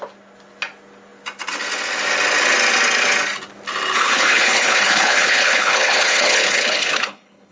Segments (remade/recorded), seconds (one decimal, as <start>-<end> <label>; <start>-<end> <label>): 0.0-4.0 recorded; 4.0-7.5 remade